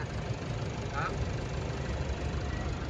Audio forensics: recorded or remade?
remade